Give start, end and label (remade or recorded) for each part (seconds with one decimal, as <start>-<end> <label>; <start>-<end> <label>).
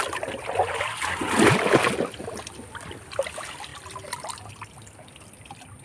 0.0-5.8 recorded